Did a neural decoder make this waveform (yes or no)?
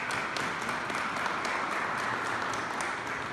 no